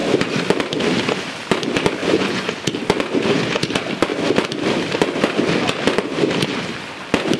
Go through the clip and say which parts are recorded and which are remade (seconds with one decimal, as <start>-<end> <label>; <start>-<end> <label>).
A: 0.0-2.0 recorded; 2.0-2.5 remade; 2.5-7.4 recorded